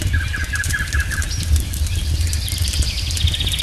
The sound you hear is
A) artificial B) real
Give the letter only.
B